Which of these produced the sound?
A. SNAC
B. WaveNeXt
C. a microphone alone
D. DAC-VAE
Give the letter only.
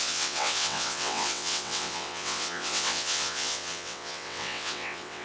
B